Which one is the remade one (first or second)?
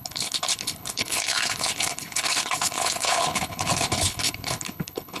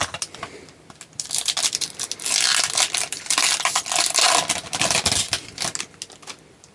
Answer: first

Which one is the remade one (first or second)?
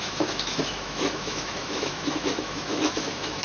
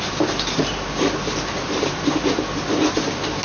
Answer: first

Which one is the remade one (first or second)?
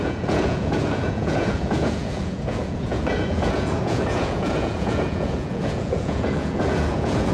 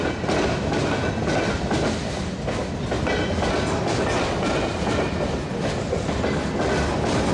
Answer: first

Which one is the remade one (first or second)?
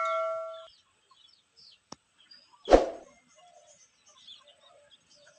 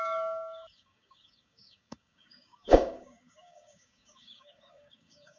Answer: second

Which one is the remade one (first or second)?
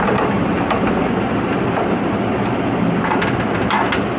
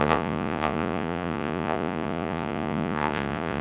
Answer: second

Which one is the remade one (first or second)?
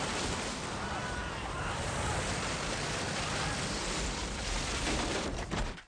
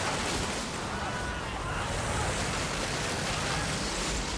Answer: first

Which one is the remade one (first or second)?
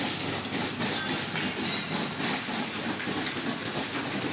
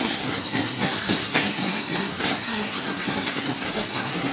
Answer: second